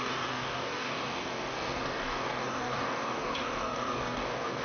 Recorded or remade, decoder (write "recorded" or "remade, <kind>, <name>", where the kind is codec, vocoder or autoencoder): remade, codec, DAC